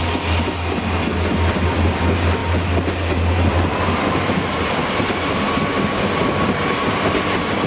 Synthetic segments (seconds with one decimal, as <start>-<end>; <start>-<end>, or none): none